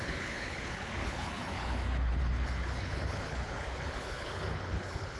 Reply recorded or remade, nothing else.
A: remade